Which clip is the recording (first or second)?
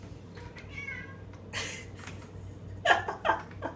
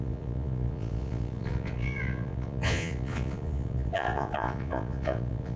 first